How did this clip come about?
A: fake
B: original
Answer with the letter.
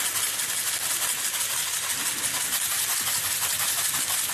B